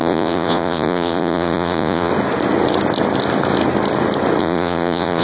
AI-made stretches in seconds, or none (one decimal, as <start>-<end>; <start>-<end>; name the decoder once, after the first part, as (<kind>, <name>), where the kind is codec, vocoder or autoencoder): 0.0-2.1 (vocoder, Vocos); 4.4-5.2